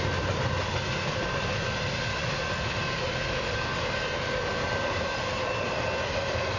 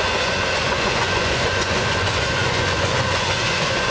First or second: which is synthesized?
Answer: second